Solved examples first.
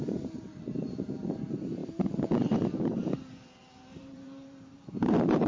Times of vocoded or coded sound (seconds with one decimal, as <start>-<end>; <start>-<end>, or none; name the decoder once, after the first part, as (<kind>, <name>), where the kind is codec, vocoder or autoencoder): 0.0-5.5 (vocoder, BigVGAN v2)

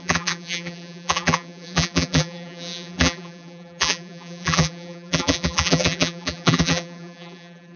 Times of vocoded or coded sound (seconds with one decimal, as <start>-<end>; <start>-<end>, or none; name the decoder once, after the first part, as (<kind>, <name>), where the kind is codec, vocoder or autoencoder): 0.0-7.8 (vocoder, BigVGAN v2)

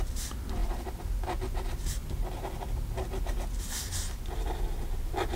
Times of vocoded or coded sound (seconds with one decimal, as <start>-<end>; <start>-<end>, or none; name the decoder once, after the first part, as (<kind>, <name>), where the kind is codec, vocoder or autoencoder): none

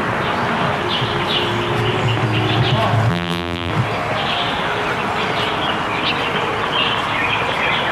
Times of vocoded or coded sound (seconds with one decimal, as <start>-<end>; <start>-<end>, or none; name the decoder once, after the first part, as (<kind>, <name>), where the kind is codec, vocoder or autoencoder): 3.1-3.7 (vocoder, BigVGAN v2)

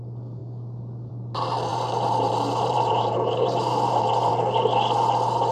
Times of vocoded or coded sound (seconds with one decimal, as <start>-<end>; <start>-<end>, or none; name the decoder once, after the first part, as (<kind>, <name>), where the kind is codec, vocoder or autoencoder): 1.7-4.3 (vocoder, BigVGAN v2)